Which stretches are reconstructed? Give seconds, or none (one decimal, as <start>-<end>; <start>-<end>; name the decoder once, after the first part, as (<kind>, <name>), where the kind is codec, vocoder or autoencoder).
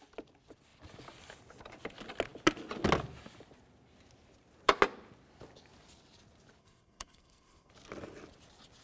6.6-7.7 (codec, SNAC)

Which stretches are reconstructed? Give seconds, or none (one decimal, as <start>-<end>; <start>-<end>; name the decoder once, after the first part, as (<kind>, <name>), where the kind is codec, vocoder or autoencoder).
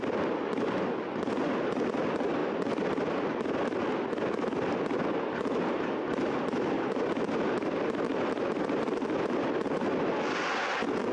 none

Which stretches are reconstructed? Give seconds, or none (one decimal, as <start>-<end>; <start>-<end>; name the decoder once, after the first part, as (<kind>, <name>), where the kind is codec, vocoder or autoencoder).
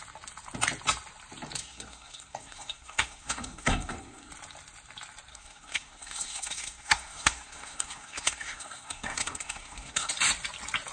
1.6-4.3 (codec, SNAC); 5.3-10.1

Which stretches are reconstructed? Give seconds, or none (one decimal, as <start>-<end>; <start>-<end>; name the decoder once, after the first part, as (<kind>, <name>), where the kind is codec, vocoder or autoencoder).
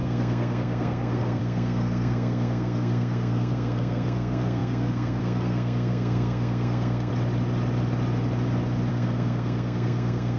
0.0-7.1 (codec, SNAC); 8.9-10.4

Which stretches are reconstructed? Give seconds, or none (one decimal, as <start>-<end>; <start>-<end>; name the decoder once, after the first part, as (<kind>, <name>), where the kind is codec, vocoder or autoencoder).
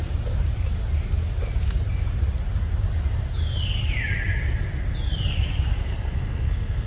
5.8-6.9 (codec, SNAC)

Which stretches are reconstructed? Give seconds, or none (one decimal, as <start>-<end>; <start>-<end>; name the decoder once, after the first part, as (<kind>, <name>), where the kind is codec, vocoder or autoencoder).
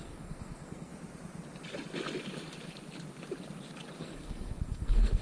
0.0-0.9 (codec, SNAC); 4.0-5.2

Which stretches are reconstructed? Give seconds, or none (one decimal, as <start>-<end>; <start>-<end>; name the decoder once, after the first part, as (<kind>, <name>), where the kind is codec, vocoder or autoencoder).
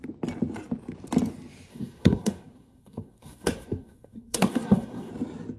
1.7-5.1 (codec, SNAC)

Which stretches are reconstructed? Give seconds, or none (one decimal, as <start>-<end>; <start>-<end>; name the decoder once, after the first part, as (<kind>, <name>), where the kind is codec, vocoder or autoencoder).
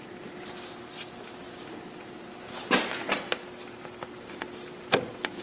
none